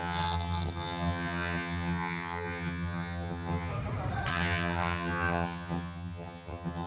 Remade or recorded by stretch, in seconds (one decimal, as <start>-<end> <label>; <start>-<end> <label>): 0.0-3.7 remade; 3.7-4.3 recorded; 4.3-6.9 remade